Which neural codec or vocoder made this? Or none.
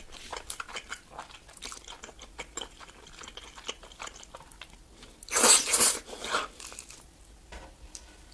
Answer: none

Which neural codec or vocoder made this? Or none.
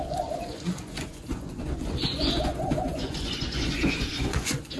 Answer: vocoder, Vocos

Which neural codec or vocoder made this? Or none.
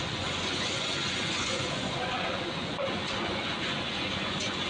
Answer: vocoder, Vocos